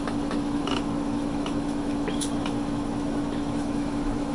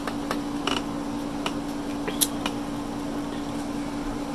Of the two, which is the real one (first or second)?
second